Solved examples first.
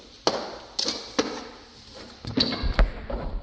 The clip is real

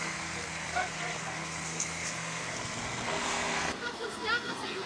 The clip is fake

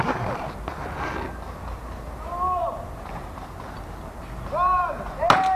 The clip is real